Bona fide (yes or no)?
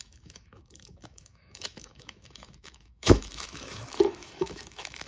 no